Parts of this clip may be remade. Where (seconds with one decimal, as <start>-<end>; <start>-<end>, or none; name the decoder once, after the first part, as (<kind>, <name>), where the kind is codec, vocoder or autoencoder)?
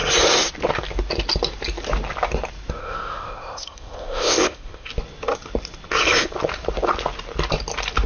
2.8-4.9 (codec, ZipCodec)